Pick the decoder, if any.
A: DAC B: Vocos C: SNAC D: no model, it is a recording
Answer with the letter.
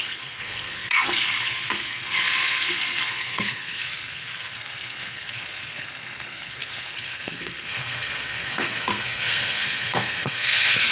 C